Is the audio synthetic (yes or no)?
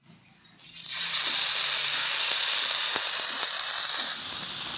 no